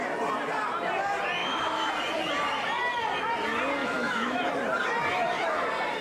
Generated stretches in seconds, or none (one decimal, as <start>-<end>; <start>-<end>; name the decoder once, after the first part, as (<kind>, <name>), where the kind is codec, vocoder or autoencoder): 1.4-1.9 (autoencoder, DAC-VAE); 3.8-4.5